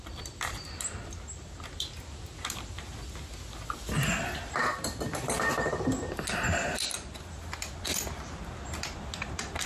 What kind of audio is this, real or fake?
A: real